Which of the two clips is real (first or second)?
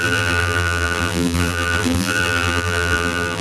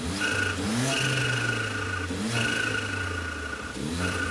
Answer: second